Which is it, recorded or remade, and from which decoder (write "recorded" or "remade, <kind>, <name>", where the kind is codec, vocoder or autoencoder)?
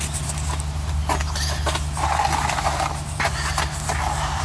recorded